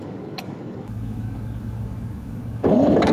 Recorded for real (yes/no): no